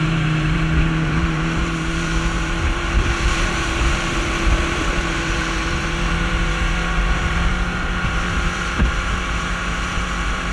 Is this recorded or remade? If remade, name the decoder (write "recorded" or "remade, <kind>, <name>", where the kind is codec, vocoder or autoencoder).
remade, vocoder, BigVGAN v2